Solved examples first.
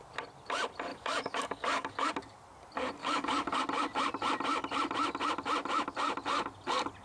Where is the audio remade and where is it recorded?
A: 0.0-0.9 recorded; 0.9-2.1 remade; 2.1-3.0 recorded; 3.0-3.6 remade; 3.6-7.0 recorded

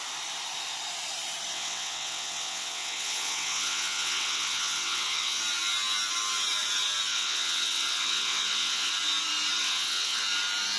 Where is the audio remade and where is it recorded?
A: 0.0-1.5 recorded; 1.5-5.4 remade; 5.4-7.1 recorded; 7.1-8.9 remade; 8.9-9.6 recorded; 9.6-10.2 remade; 10.2-10.8 recorded